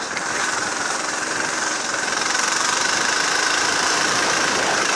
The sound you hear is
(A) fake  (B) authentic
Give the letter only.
A